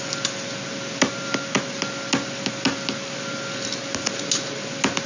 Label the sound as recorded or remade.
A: recorded